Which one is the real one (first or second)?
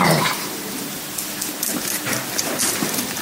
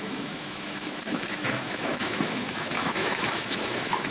first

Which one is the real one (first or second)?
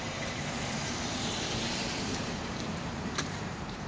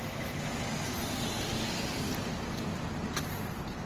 second